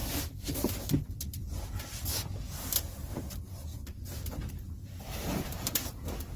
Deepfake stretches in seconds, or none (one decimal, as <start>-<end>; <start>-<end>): 4.8-6.4